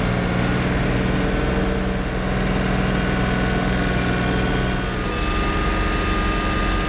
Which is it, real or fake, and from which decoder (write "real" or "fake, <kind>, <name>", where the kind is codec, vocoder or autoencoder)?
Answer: real